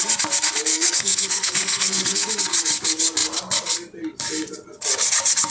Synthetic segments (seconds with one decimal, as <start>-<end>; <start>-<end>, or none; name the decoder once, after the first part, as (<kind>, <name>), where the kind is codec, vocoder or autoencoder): 0.7-2.3 (codec, SNAC)